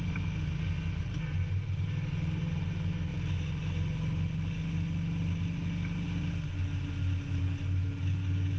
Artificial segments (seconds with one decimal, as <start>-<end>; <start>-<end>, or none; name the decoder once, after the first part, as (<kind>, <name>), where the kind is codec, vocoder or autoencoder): none